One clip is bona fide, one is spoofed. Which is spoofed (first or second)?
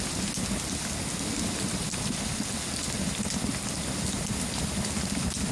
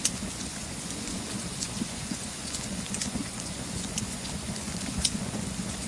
second